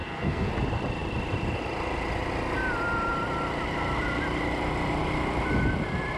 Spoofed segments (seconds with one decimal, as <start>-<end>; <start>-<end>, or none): 0.0-0.5